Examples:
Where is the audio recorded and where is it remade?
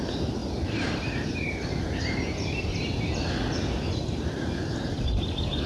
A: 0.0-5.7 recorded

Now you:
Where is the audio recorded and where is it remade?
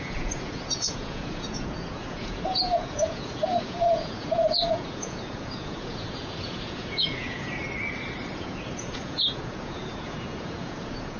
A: 0.0-7.6 remade; 7.6-8.3 recorded; 8.3-11.2 remade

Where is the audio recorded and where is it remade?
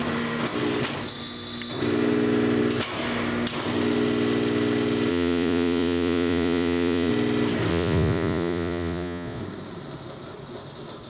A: 0.0-5.1 recorded; 5.1-7.1 remade; 7.1-7.7 recorded; 7.7-9.4 remade; 9.4-11.1 recorded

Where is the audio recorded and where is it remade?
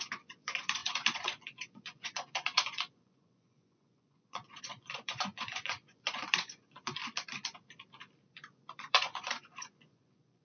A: 0.0-7.0 remade; 7.0-8.3 recorded; 8.3-10.4 remade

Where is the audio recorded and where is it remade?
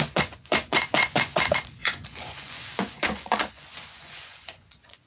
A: 0.0-5.1 remade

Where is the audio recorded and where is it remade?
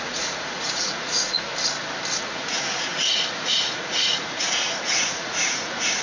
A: 0.0-1.5 remade; 1.5-2.2 recorded; 2.2-6.0 remade